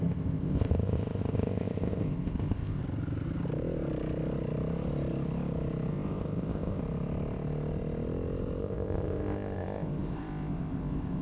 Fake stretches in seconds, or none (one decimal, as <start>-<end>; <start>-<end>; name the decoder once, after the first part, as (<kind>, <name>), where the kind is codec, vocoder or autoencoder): 0.0-2.8 (codec, ZipCodec); 5.9-6.8; 8.6-11.2